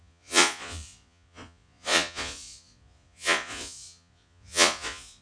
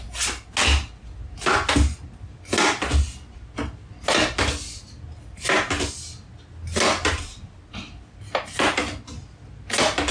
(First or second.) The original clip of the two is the second